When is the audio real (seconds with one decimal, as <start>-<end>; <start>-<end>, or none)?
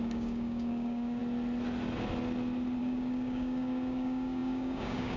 1.2-2.8